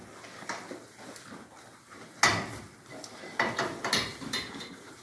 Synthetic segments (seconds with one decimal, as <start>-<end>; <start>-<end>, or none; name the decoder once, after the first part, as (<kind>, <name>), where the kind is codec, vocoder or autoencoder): 1.7-2.2 (vocoder, BigVGAN v2); 4.1-5.0